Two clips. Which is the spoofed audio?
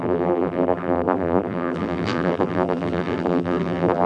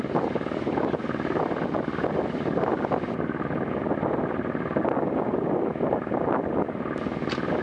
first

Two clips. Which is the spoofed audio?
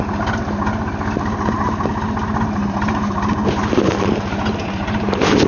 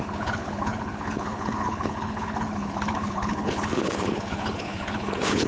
second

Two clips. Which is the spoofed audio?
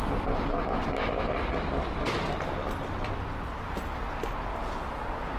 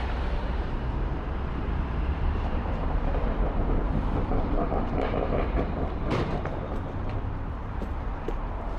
second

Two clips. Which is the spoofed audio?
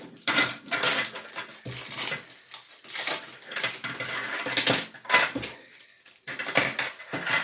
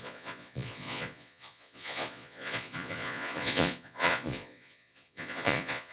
second